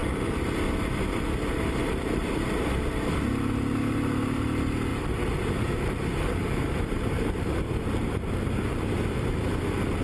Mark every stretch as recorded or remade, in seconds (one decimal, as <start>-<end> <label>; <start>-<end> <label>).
0.0-1.8 recorded; 1.8-2.7 remade; 2.7-4.9 recorded; 4.9-9.6 remade; 9.6-10.0 recorded